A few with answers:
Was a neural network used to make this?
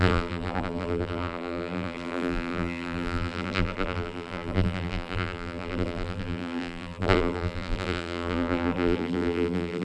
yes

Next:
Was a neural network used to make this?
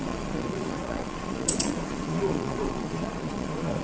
yes